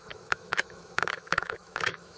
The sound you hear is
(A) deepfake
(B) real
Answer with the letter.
A